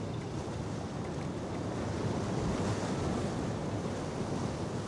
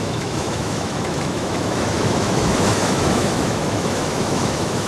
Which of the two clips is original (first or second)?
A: first